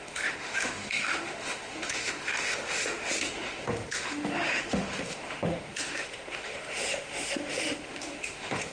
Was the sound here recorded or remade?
remade